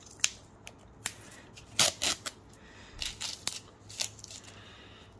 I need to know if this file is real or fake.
real